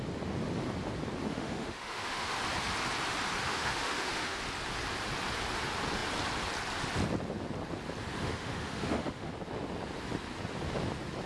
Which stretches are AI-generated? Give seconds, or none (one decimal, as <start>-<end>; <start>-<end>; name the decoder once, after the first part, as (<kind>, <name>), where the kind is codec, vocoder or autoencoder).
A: 1.3-2.4 (autoencoder, DAC-VAE); 3.4-4.4; 8.2-9.3